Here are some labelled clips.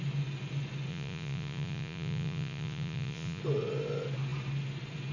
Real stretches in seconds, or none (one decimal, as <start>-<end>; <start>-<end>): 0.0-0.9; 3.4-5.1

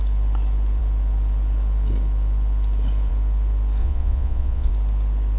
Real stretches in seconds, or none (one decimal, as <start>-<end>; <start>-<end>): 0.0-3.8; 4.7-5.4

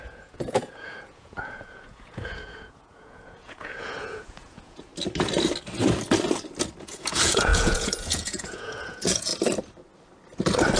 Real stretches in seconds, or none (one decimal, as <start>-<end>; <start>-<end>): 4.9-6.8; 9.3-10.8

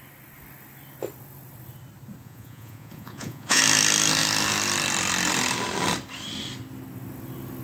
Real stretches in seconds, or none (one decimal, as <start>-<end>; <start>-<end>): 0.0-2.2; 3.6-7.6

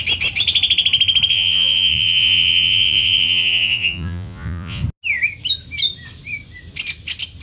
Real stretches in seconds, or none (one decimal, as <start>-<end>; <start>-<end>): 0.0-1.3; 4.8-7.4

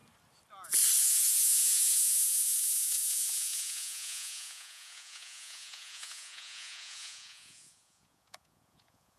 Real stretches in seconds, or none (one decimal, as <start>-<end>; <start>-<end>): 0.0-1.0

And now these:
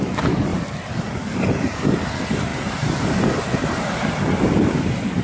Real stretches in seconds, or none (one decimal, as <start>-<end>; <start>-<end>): 0.0-5.2

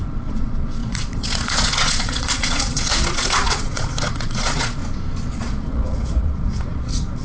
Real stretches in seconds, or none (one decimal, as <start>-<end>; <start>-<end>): 4.8-5.3